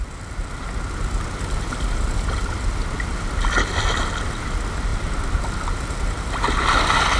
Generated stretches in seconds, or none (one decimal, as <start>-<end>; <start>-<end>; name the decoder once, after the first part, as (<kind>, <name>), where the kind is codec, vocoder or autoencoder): none